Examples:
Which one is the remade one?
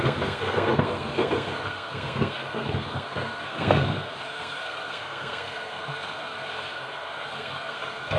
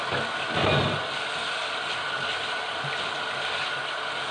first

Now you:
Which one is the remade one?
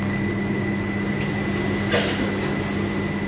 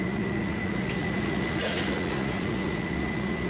second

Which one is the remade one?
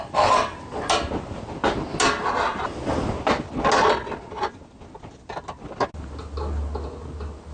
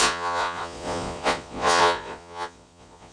second